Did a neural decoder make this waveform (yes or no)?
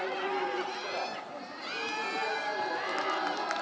no